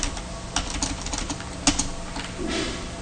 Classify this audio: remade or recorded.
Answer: recorded